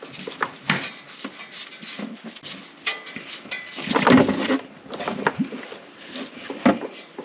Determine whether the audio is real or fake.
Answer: real